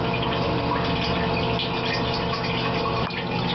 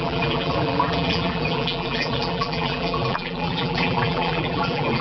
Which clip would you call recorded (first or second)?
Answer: first